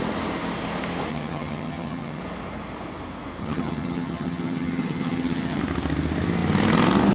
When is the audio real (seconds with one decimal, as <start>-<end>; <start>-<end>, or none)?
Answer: 0.0-1.1; 2.2-3.4; 5.6-7.1